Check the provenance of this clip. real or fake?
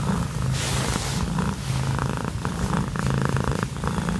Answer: real